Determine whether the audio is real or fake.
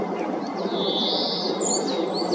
real